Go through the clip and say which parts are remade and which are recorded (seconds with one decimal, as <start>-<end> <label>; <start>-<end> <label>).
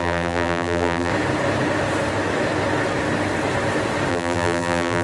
0.0-1.1 remade; 1.1-4.1 recorded; 4.1-5.0 remade